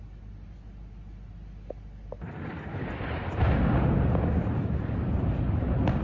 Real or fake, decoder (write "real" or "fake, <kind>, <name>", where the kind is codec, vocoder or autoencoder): real